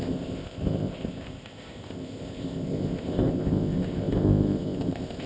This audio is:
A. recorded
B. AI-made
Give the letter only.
B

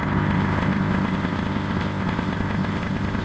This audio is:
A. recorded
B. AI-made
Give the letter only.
B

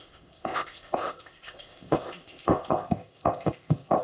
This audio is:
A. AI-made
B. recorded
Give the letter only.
A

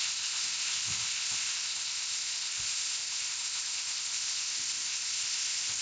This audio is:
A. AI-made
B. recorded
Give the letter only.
A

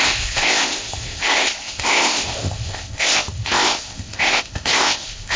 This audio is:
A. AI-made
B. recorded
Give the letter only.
A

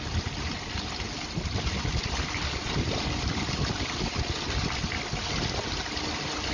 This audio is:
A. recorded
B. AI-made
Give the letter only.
A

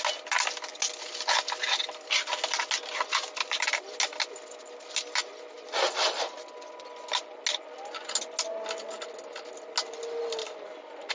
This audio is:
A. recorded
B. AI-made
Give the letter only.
A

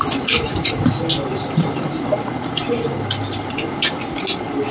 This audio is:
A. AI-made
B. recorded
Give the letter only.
B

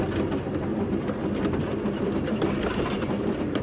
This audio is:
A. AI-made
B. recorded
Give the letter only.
B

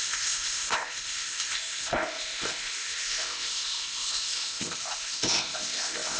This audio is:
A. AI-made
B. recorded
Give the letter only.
A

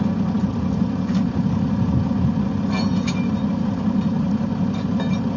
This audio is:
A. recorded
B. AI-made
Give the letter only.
A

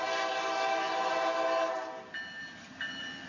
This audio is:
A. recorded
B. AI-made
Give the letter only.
A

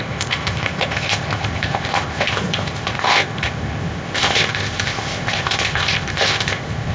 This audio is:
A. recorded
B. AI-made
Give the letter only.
B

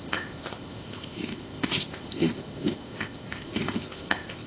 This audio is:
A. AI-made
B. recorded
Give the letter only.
A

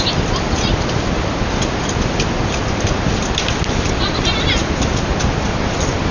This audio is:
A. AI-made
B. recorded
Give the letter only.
B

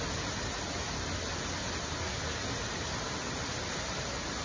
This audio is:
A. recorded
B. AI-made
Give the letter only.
A